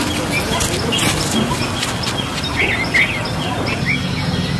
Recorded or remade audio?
recorded